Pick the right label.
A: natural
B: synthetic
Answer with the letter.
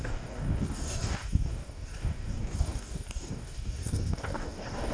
B